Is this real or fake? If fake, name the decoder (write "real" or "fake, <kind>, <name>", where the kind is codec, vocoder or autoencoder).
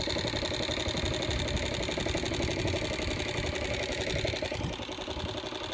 real